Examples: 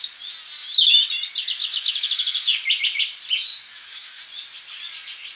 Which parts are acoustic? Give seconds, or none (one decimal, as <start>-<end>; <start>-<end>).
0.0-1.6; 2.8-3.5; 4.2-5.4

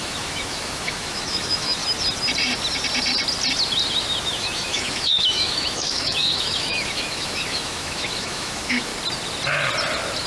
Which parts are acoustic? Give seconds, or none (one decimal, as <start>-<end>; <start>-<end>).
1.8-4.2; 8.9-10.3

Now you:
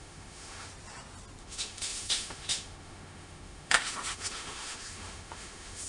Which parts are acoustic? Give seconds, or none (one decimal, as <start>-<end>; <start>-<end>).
0.7-1.4